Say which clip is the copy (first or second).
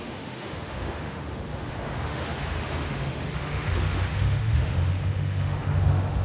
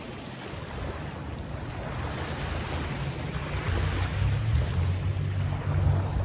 first